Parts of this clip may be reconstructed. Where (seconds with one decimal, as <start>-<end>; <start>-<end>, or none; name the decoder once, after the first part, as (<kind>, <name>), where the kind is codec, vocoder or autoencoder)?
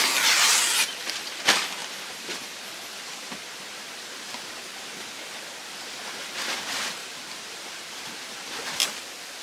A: 0.5-1.4 (vocoder, BigVGAN v2); 1.8-3.5; 7.0-8.5